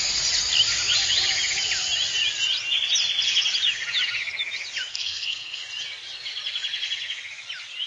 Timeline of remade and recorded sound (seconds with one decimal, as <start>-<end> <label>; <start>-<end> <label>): 0.0-4.9 recorded; 4.9-5.6 remade; 5.6-7.9 recorded